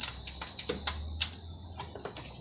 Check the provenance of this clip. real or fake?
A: real